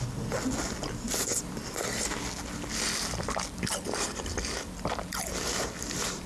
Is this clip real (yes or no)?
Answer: yes